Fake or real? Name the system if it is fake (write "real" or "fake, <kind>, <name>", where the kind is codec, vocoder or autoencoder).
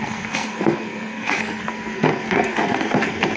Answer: fake, codec, SNAC